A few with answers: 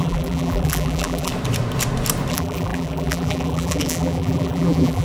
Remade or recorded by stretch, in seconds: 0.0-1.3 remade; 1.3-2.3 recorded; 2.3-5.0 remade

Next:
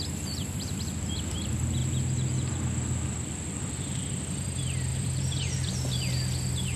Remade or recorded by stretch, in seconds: 0.0-4.9 recorded; 4.9-5.7 remade; 5.7-6.8 recorded

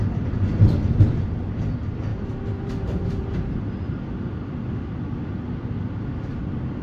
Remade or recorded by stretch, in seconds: 0.0-2.1 recorded; 2.1-4.0 remade; 4.0-6.8 recorded

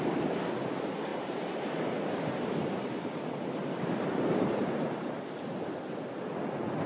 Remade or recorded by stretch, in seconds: 0.0-1.1 recorded; 1.1-5.2 remade; 5.2-6.9 recorded

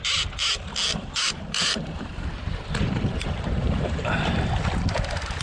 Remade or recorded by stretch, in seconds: 0.0-0.9 recorded; 0.9-4.1 remade; 4.1-5.4 recorded

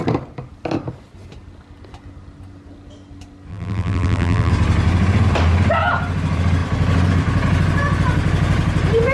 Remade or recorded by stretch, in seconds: 0.0-3.5 recorded; 3.5-4.5 remade; 4.5-9.1 recorded

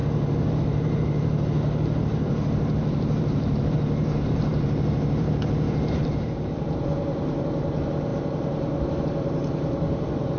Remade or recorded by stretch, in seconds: 0.0-8.1 remade; 8.1-9.0 recorded; 9.0-10.4 remade